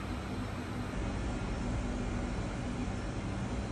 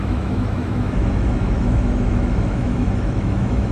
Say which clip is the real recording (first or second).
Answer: first